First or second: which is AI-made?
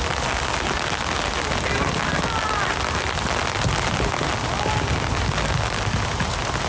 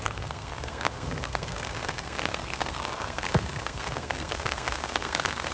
second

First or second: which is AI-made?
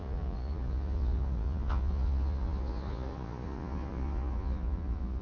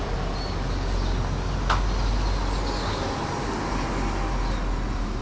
first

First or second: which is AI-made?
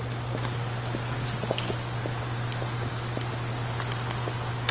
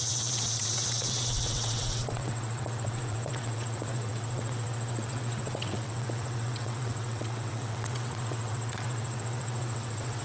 second